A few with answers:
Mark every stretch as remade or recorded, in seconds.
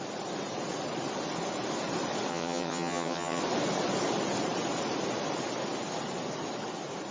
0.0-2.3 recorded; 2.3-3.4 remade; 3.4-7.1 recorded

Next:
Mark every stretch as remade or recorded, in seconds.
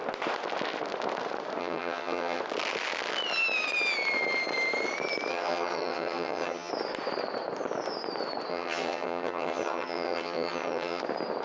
0.0-1.6 recorded; 1.6-2.4 remade; 2.4-5.3 recorded; 5.3-6.7 remade; 6.7-8.5 recorded; 8.5-11.0 remade; 11.0-11.4 recorded